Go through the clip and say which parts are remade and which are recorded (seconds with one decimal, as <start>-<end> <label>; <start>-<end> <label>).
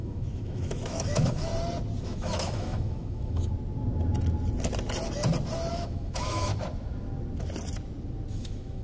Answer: 0.0-1.5 remade; 1.5-2.0 recorded; 2.0-3.5 remade; 3.5-5.7 recorded; 5.7-6.5 remade; 6.5-8.3 recorded; 8.3-8.8 remade